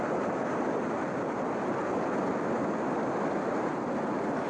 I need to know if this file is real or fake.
real